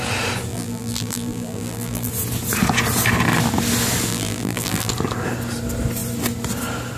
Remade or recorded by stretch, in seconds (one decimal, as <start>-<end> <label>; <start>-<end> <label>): 0.0-0.5 recorded; 0.5-2.1 remade; 2.1-4.1 recorded; 4.1-4.9 remade; 4.9-7.0 recorded